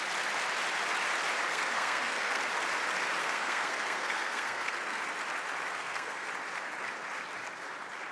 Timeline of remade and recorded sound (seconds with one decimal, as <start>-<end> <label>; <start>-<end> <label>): 0.0-1.5 recorded; 1.5-2.4 remade; 2.4-3.2 recorded; 3.2-5.0 remade; 5.0-5.7 recorded; 5.7-6.3 remade; 6.3-8.1 recorded